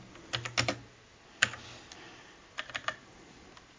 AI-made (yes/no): no